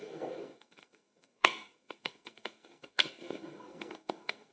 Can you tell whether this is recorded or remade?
remade